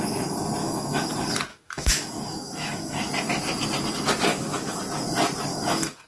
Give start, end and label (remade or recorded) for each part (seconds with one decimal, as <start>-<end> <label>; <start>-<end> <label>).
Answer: 0.0-0.6 recorded; 0.6-1.1 remade; 1.1-1.5 recorded; 1.5-3.1 remade; 3.1-4.3 recorded; 4.3-4.8 remade; 4.8-5.5 recorded; 5.5-6.1 remade